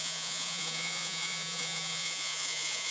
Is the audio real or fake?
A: fake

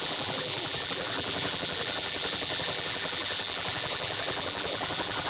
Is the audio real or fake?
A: fake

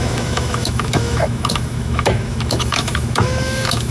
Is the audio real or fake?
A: fake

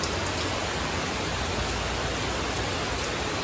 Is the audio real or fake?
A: real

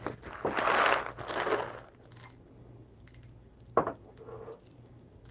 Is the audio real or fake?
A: real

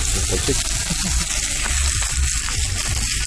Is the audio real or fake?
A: real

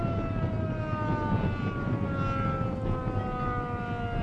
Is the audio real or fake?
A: real